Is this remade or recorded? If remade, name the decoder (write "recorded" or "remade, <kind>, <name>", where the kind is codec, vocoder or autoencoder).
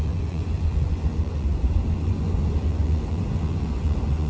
remade, vocoder, Vocos